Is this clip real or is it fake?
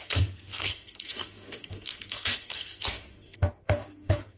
fake